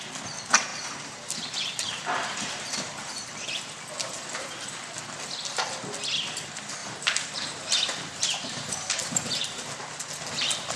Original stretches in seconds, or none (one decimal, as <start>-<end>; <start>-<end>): 0.0-0.7; 3.1-6.8; 9.7-10.8